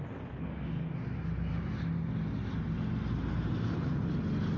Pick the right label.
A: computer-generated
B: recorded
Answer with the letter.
B